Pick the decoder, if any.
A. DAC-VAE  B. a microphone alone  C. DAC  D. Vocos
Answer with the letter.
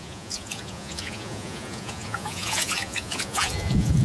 D